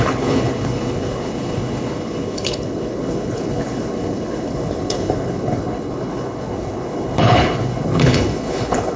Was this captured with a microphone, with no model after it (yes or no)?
no